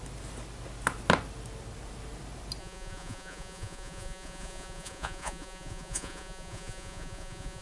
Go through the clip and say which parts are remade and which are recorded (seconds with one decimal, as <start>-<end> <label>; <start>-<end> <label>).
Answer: 0.0-2.6 recorded; 2.6-7.6 remade